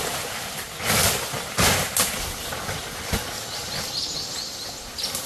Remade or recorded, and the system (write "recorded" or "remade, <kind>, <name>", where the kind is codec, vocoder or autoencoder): recorded